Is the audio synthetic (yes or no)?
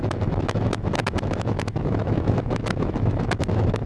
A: yes